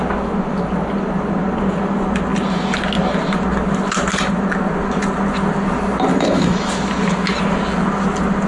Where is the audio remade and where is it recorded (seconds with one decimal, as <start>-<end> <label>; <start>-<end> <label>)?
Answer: 0.0-6.1 recorded; 6.1-6.7 remade; 6.7-8.5 recorded

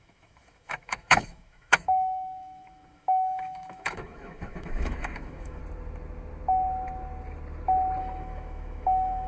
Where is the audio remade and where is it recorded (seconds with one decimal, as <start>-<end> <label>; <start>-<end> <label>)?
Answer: 0.0-5.6 remade; 5.6-8.0 recorded; 8.0-9.3 remade

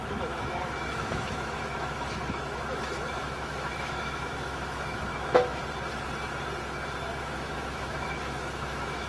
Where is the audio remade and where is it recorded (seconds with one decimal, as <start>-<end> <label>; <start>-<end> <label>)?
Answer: 0.0-5.6 remade; 5.6-7.1 recorded; 7.1-9.1 remade

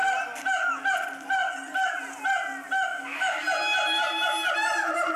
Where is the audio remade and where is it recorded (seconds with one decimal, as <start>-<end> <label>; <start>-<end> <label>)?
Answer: 0.0-2.9 recorded; 2.9-3.4 remade; 3.4-5.2 recorded

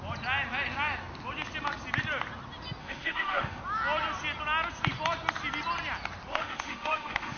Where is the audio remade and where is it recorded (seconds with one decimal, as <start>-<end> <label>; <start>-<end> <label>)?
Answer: 0.0-2.8 recorded; 2.8-3.6 remade; 3.6-6.3 recorded; 6.3-7.4 remade

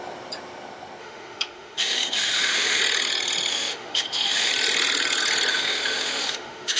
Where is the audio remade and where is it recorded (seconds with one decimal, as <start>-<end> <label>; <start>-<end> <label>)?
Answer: 0.0-1.0 recorded; 1.0-2.8 remade; 2.8-3.5 recorded; 3.5-4.5 remade; 4.5-5.5 recorded; 5.5-6.8 remade

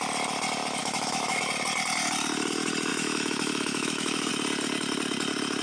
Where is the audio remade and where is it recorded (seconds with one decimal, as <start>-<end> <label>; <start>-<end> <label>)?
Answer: 0.0-0.8 recorded; 0.8-1.4 remade; 1.4-2.9 recorded; 2.9-4.3 remade; 4.3-5.6 recorded

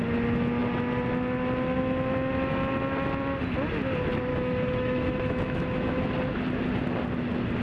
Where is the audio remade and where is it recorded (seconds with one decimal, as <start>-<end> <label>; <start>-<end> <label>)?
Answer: 0.0-4.3 recorded; 4.3-6.0 remade; 6.0-7.6 recorded